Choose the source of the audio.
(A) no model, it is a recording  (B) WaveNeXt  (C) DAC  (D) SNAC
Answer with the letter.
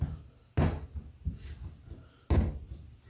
A